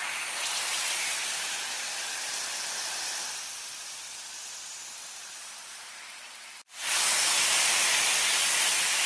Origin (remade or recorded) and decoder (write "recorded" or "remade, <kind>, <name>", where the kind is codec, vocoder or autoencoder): recorded